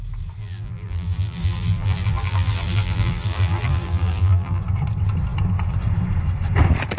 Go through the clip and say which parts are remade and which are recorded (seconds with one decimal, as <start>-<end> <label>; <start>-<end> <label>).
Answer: 0.0-0.4 recorded; 0.4-4.6 remade; 4.6-7.0 recorded